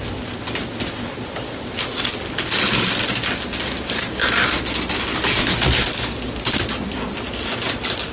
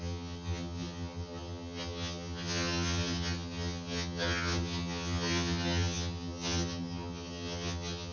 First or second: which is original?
first